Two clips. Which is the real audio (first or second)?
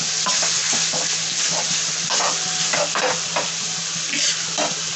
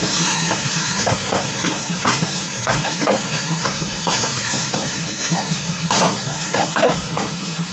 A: first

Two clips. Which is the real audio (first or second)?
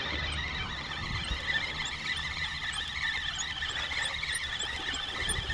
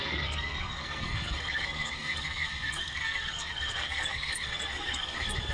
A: first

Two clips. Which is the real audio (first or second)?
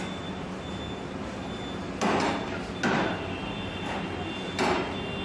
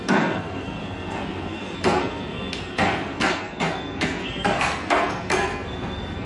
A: first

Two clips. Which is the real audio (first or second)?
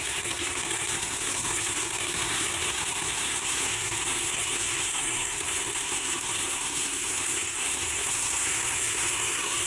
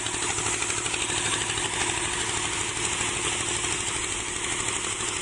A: second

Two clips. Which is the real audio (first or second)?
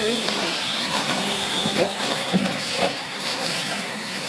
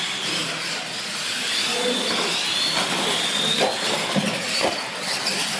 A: second